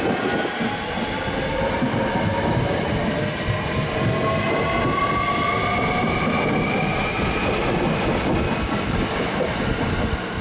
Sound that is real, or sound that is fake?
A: real